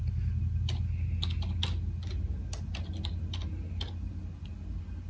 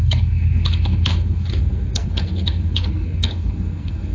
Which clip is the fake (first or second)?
second